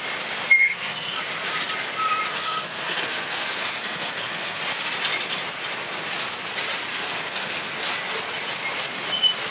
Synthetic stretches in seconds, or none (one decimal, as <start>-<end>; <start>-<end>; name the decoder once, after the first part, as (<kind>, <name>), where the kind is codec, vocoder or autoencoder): 0.6-1.2 (codec, SNAC); 2.3-4.6; 6.9-7.7